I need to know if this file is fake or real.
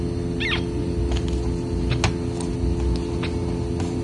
real